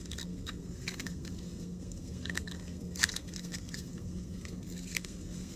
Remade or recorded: remade